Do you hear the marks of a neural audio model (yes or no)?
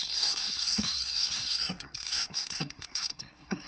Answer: yes